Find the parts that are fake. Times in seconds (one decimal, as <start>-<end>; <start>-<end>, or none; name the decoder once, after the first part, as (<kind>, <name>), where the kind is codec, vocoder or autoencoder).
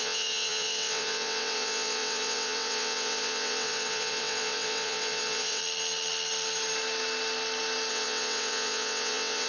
0.0-5.6 (vocoder, WaveNeXt); 7.9-9.5